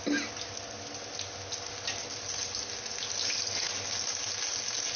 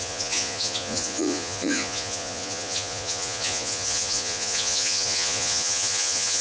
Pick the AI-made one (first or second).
second